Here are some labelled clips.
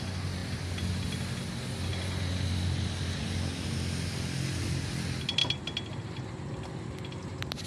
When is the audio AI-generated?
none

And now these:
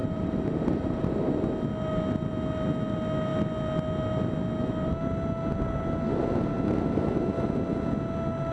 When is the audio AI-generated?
0.0-1.3 (vocoder, BigVGAN v2)